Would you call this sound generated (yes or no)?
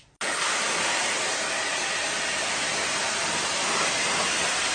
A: no